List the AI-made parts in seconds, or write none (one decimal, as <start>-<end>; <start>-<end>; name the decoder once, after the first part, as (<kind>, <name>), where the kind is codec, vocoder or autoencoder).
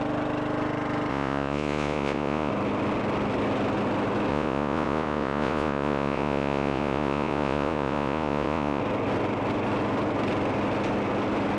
1.1-2.5 (vocoder, Vocos); 4.3-8.8